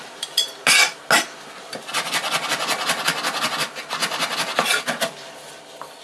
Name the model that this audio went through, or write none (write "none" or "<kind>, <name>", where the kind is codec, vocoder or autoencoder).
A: none